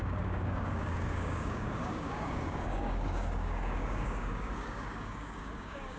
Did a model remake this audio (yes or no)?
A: yes